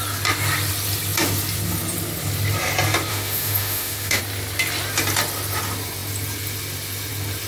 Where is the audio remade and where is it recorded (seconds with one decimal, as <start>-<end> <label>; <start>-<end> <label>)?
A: 0.0-3.1 recorded; 3.1-4.2 remade; 4.2-7.5 recorded